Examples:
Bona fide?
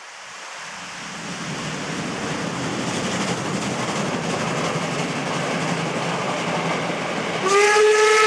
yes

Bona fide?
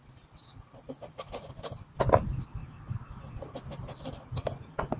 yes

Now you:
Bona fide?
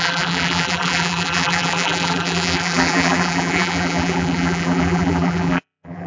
no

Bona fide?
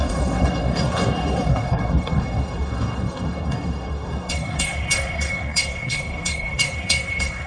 no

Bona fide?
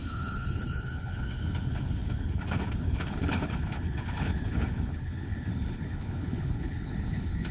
no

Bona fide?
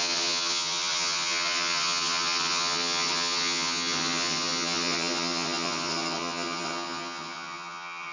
no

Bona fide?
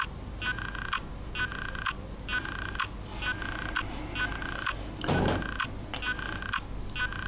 yes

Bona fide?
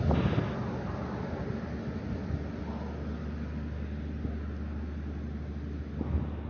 yes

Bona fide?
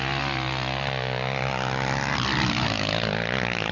yes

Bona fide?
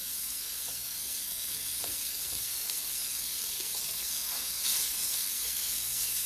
no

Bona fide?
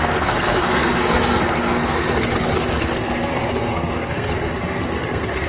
no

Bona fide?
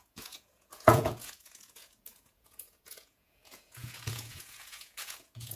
no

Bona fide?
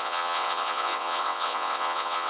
no